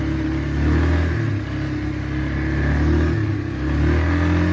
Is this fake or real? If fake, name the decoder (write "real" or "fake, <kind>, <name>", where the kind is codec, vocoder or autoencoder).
real